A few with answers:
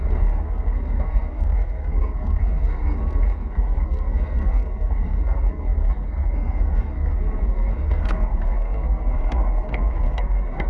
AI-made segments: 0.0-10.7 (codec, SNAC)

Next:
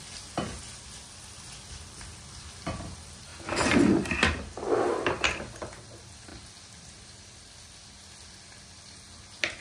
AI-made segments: none

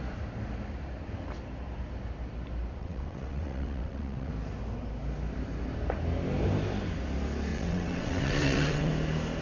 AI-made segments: 2.8-4.3 (vocoder, WaveNeXt); 7.5-8.9

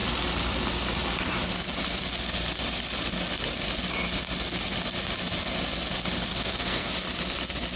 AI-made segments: 6.3-6.9 (codec, SNAC)

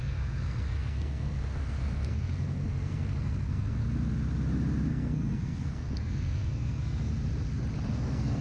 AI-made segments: 0.0-3.8 (codec, SNAC); 4.9-7.1; 7.9-8.4

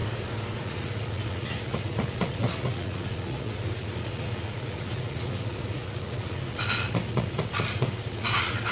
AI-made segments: 0.6-8.7 (vocoder, Vocos)